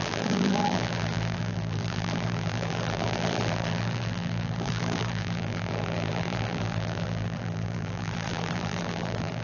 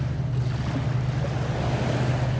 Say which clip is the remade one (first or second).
first